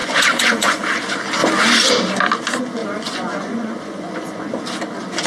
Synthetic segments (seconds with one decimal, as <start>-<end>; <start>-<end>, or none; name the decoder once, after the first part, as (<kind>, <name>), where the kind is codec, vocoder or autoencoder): 0.0-0.8 (vocoder, Vocos); 2.8-4.5